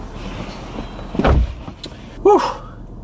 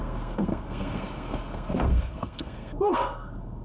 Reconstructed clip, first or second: second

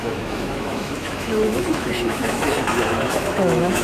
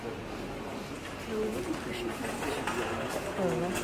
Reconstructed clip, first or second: first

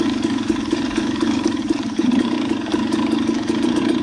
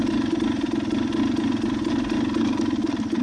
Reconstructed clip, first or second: first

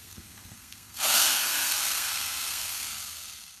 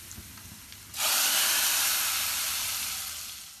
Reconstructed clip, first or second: first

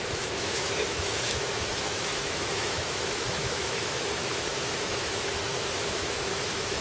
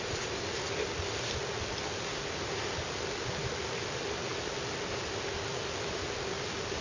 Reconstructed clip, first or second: first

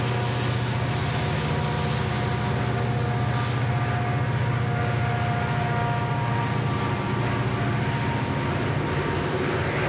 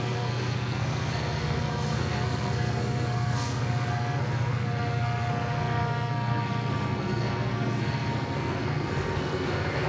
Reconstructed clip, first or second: second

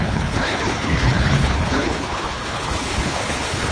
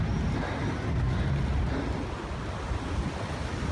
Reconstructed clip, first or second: first